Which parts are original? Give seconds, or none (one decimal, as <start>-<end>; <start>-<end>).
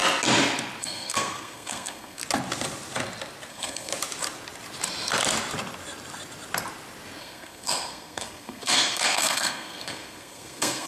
0.0-0.8; 2.2-3.5; 3.9-7.2